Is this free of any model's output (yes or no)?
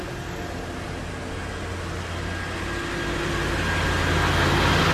yes